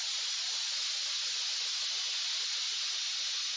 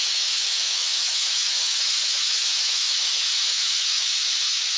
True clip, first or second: first